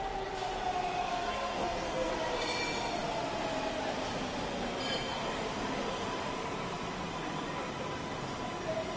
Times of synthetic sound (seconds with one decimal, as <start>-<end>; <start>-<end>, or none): 1.1-2.1